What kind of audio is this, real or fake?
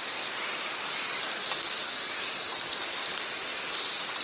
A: real